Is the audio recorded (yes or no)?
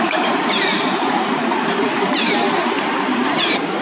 no